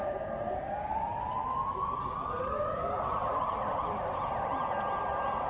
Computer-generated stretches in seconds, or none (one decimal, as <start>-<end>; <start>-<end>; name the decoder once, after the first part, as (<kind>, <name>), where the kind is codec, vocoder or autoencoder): 1.4-4.7 (vocoder, BigVGAN v2)